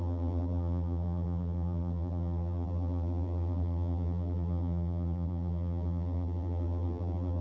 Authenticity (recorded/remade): remade